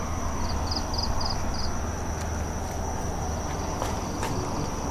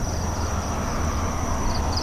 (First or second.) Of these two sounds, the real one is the first